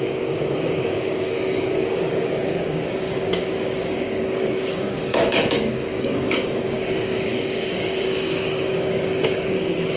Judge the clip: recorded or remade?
remade